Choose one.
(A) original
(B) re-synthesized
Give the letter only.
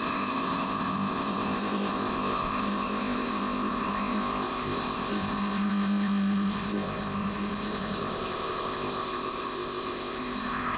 B